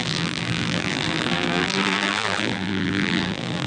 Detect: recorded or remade remade